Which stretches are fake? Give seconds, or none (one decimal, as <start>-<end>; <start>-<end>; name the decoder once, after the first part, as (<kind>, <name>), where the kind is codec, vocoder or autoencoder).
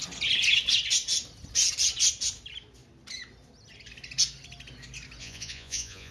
5.2-6.1 (vocoder, Vocos)